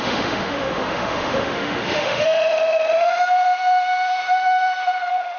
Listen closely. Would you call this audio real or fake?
fake